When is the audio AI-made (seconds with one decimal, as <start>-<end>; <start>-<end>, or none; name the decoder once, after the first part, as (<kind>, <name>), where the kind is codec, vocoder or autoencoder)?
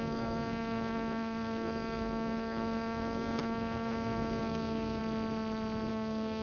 0.0-5.0 (codec, SNAC); 5.9-6.4